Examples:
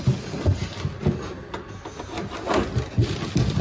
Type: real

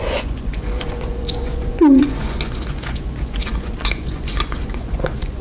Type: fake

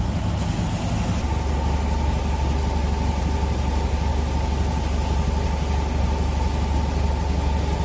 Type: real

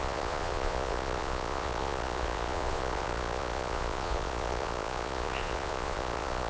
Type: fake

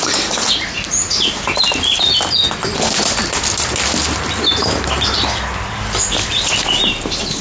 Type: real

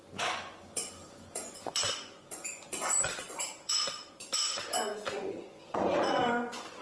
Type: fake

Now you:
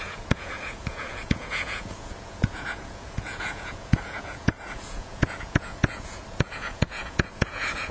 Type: fake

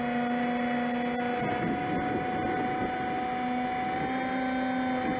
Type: real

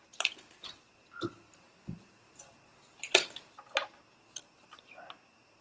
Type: real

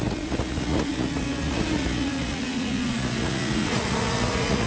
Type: fake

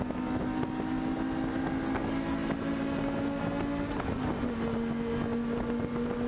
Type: real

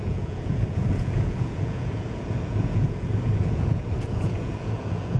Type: fake